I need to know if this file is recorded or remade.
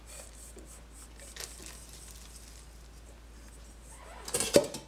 recorded